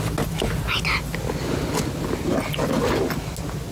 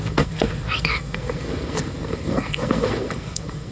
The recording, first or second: first